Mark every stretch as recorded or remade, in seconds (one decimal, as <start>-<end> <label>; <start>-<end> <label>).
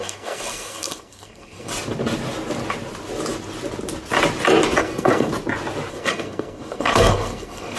0.0-1.7 remade; 1.7-4.8 recorded; 4.8-5.3 remade; 5.3-5.9 recorded; 5.9-7.8 remade